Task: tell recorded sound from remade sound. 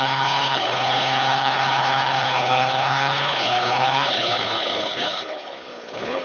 remade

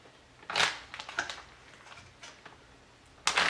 recorded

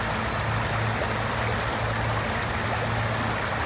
recorded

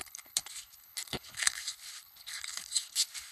remade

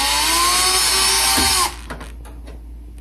recorded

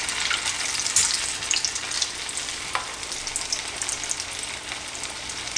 recorded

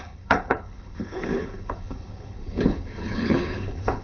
remade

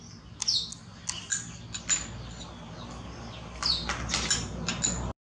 recorded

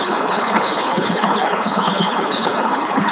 remade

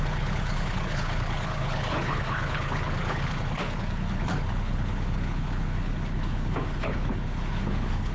remade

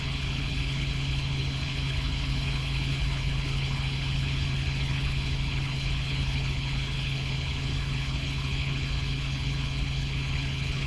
remade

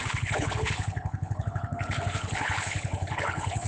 remade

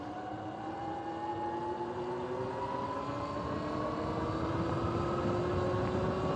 recorded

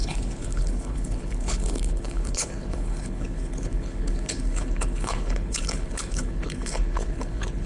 remade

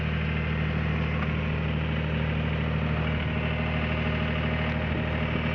recorded